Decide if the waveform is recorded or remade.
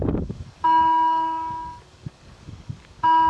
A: remade